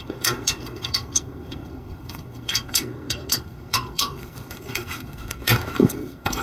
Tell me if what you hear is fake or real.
fake